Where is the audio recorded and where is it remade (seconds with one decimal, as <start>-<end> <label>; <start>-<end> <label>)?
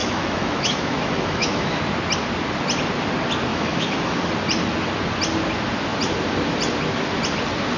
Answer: 0.0-1.8 remade; 1.8-3.5 recorded; 3.5-4.3 remade; 4.3-7.8 recorded